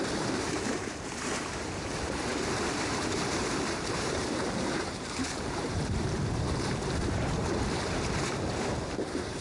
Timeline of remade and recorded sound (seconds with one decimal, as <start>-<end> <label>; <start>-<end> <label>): 0.0-9.4 remade